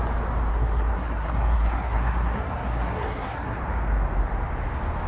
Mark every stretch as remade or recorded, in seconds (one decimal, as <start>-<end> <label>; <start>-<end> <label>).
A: 0.0-0.5 recorded; 0.5-3.6 remade; 3.6-5.1 recorded